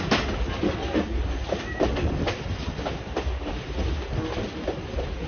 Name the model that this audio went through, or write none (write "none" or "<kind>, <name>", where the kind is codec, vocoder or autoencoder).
none